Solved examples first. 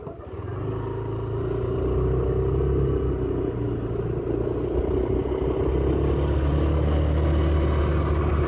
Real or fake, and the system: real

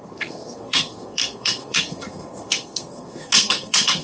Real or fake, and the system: fake, codec, SNAC